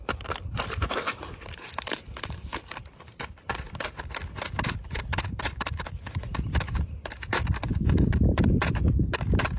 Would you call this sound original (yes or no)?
no